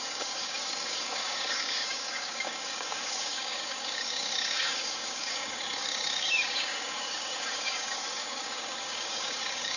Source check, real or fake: fake